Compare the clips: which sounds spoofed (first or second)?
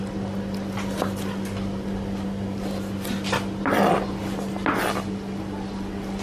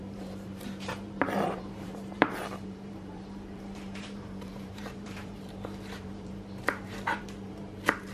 second